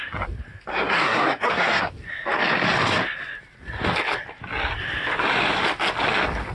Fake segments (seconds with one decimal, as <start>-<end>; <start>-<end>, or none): 0.7-1.9